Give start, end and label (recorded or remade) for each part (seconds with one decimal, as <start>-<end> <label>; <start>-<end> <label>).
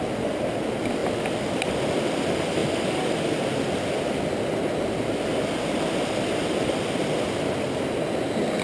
0.0-8.6 recorded